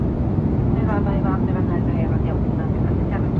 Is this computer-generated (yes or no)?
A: no